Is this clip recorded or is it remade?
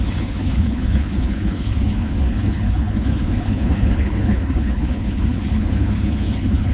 remade